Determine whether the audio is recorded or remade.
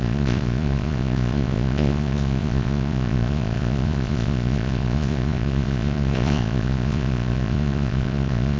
remade